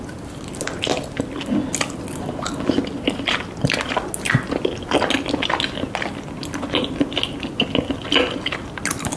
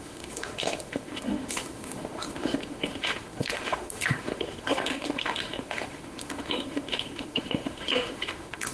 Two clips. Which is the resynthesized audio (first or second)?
second